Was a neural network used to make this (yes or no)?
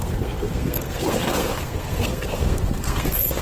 yes